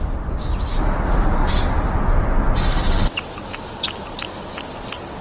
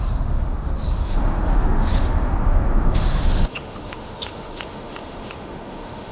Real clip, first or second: first